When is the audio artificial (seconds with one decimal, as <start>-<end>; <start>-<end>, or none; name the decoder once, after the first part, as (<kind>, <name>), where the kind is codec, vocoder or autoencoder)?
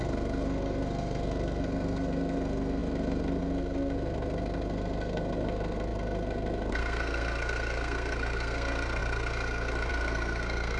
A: 0.0-10.8 (codec, SNAC)